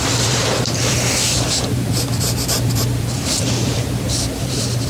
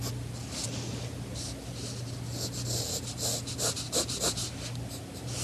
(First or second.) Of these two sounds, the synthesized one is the first